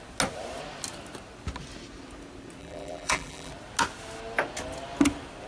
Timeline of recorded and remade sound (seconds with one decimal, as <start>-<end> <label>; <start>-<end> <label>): 0.0-2.6 recorded; 2.6-3.5 remade; 3.5-5.5 recorded